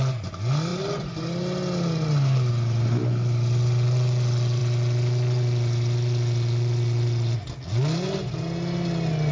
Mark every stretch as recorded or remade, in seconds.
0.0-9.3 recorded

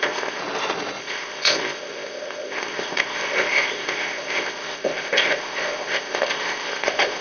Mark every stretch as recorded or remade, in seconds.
0.0-0.4 remade; 0.4-1.0 recorded; 1.0-7.2 remade

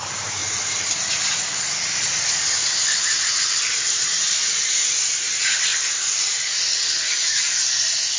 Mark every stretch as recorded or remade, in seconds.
0.0-0.4 remade; 0.4-2.7 recorded; 2.7-4.4 remade; 4.4-5.2 recorded; 5.2-5.7 remade; 5.7-8.2 recorded

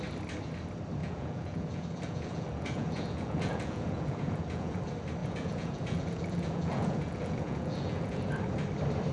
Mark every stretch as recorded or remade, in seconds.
0.0-1.0 recorded; 1.0-4.8 remade; 4.8-5.2 recorded; 5.2-8.3 remade; 8.3-9.1 recorded

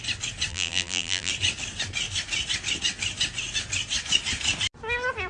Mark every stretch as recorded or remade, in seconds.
0.0-0.5 recorded; 0.5-1.3 remade; 1.3-5.3 recorded